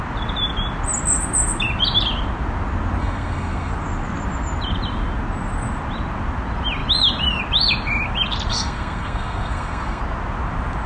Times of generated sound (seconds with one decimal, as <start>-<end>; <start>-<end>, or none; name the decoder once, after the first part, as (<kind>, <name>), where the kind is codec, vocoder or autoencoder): 3.0-3.7 (codec, SNAC); 8.5-10.0